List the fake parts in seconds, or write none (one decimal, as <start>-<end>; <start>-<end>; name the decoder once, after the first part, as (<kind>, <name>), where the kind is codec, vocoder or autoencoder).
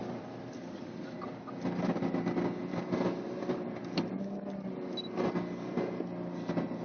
0.0-1.2 (vocoder, BigVGAN v2); 2.6-4.1